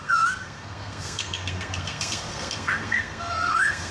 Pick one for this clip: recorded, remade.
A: remade